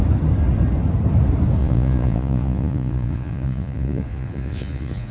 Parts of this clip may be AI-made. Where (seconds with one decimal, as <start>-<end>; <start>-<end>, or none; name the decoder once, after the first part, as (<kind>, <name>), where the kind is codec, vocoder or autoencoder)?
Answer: 1.6-5.1 (vocoder, Vocos)